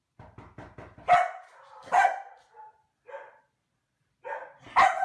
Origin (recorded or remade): recorded